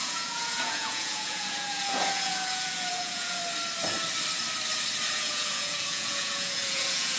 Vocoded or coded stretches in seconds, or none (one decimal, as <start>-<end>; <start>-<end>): 0.0-3.4; 5.1-7.2